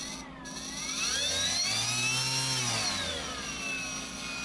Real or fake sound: real